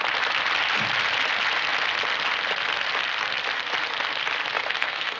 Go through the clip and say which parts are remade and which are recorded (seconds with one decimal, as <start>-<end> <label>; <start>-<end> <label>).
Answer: 0.0-4.5 recorded; 4.5-5.2 remade